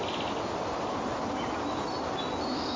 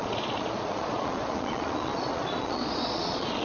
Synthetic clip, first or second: second